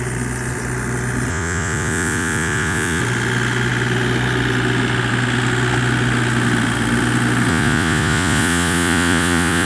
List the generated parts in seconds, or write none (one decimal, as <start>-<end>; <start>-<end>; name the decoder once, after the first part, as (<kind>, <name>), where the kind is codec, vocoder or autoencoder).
1.3-3.0 (vocoder, Vocos); 7.5-9.7